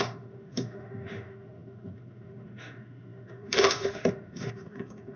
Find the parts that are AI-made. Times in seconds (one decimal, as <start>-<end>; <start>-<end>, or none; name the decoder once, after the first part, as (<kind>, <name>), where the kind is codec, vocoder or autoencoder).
0.0-5.2 (autoencoder, DAC-VAE)